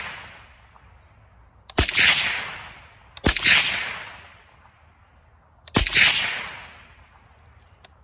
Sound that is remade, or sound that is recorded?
recorded